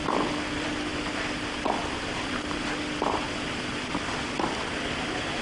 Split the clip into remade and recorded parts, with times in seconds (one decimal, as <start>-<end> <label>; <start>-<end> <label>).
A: 0.0-5.4 recorded

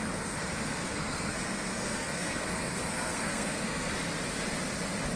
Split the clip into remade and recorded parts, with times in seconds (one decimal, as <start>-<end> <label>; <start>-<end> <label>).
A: 0.0-0.8 recorded; 0.8-3.9 remade; 3.9-5.2 recorded

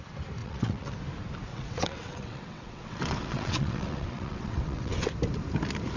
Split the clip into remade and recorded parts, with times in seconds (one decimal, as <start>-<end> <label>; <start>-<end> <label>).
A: 0.0-0.4 recorded; 0.4-0.9 remade; 0.9-1.5 recorded; 1.5-5.1 remade; 5.1-6.0 recorded